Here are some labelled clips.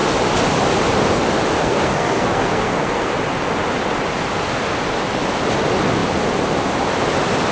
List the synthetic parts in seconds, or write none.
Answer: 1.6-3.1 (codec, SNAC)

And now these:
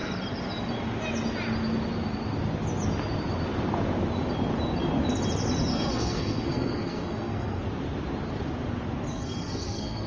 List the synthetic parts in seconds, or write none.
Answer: 5.7-7.6 (codec, SNAC); 9.1-10.1

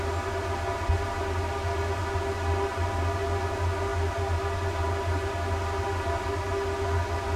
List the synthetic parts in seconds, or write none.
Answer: none

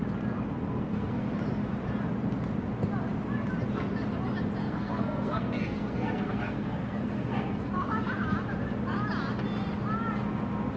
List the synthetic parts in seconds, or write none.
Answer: 0.6-1.3 (codec, SNAC); 4.6-7.7

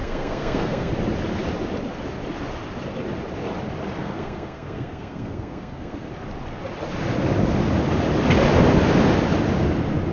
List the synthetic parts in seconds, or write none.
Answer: 0.0-0.9 (codec, SNAC); 4.0-6.1